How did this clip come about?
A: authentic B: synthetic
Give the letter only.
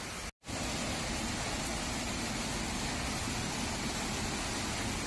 A